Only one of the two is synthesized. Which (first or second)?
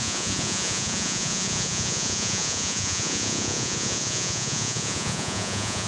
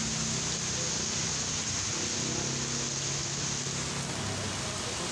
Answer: first